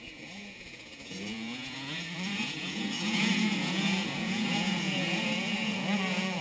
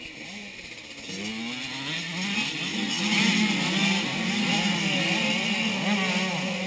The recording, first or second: second